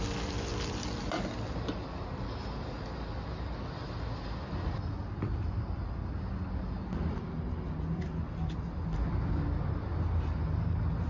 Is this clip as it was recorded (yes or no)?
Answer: yes